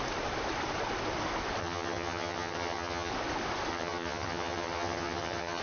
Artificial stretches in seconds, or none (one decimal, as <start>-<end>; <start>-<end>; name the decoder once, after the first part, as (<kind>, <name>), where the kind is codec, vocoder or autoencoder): 1.6-3.1 (vocoder, HiFi-GAN); 3.7-5.6